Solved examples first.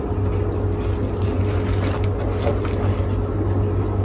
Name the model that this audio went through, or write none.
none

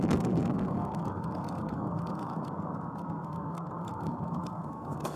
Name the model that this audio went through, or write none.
codec, SNAC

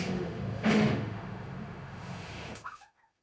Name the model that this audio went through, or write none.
autoencoder, DAC-VAE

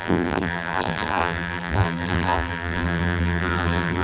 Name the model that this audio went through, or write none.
vocoder, BigVGAN v2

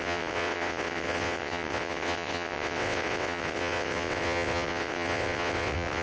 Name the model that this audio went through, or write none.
vocoder, WaveNeXt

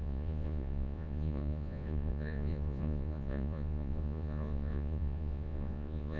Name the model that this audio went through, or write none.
vocoder, Vocos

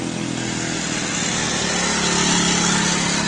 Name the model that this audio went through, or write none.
none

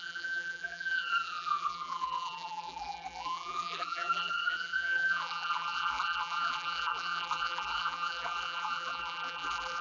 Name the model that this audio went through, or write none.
vocoder, BigVGAN v2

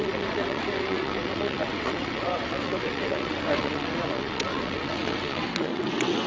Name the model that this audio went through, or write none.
vocoder, WaveNeXt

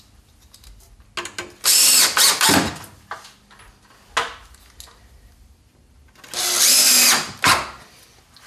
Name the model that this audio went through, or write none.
none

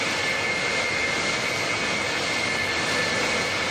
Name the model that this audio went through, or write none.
none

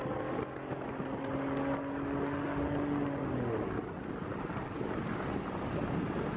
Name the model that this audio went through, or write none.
none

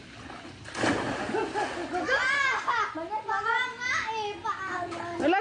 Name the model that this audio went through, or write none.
none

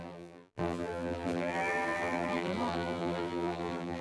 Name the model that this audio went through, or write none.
vocoder, BigVGAN v2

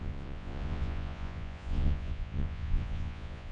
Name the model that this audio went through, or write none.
vocoder, Vocos